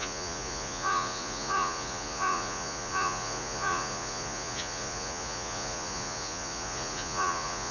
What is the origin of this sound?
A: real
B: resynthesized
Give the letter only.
B